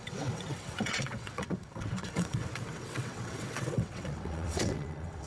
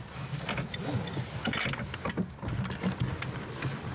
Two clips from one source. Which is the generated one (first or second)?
first